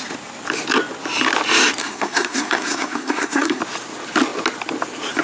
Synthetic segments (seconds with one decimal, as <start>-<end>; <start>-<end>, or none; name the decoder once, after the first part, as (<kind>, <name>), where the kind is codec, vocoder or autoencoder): 1.8-3.6 (codec, SNAC)